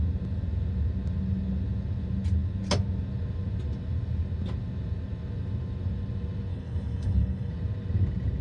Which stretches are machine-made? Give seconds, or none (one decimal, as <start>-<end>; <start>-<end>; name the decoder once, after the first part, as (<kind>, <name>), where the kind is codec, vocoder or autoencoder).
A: 6.5-7.5 (codec, HILCodec)